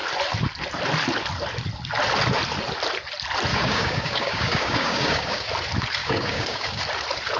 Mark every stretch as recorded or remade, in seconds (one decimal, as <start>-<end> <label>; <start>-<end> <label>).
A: 0.0-3.5 recorded; 3.5-5.5 remade; 5.5-6.0 recorded; 6.0-6.8 remade; 6.8-7.4 recorded